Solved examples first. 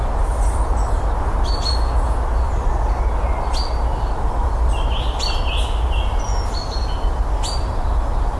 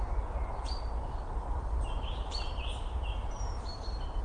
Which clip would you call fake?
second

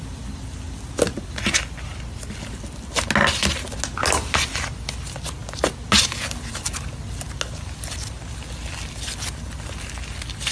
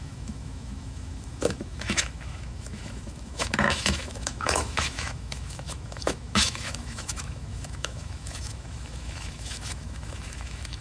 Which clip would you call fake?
second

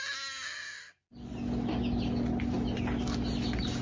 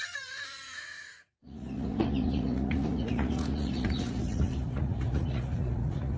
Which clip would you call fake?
second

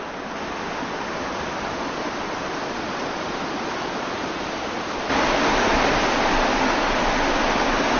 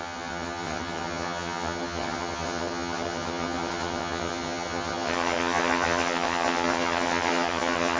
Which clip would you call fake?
second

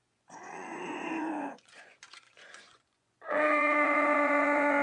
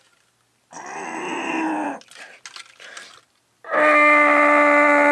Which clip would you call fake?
first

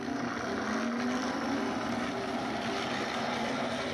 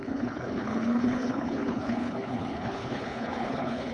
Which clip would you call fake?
second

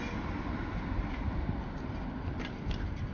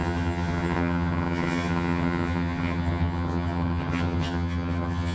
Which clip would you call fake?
second